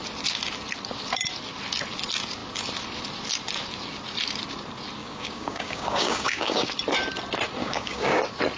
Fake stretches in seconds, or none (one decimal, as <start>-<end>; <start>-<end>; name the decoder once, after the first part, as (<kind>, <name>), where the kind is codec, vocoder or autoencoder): 5.0-6.7 (codec, DAC); 7.6-8.2